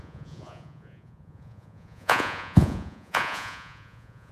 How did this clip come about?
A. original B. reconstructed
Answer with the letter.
B